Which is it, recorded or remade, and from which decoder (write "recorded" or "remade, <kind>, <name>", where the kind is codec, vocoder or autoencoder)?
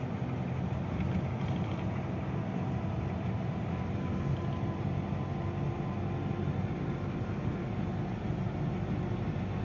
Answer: recorded